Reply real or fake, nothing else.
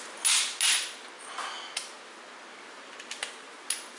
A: real